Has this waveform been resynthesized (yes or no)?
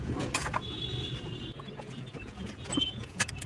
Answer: yes